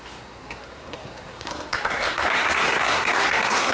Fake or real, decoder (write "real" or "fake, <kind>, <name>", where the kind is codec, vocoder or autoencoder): fake, codec, SNAC